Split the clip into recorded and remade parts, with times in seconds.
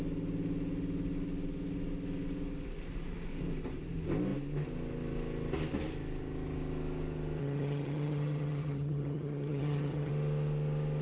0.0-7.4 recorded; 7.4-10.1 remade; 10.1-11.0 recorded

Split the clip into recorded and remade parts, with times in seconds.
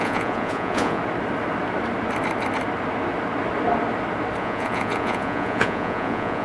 0.0-1.0 remade; 1.0-4.4 recorded; 4.4-6.4 remade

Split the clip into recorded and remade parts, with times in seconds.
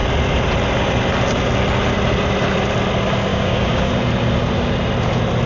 0.0-3.3 recorded; 3.3-3.9 remade; 3.9-5.5 recorded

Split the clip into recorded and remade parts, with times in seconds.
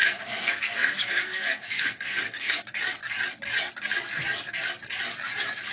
0.0-2.6 remade; 2.6-5.7 recorded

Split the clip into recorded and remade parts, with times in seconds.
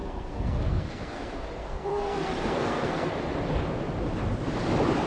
0.0-3.1 remade; 3.1-5.1 recorded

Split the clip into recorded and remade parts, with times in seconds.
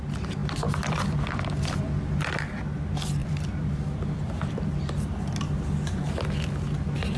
0.0-0.4 recorded; 0.4-1.8 remade; 1.8-3.2 recorded; 3.2-6.1 remade; 6.1-7.2 recorded